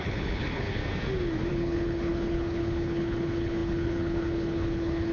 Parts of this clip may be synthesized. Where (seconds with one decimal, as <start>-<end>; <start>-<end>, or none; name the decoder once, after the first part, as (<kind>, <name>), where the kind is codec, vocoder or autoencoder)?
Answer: 0.0-0.8 (codec, HILCodec); 1.5-5.1